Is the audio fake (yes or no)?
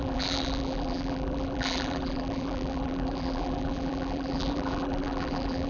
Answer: yes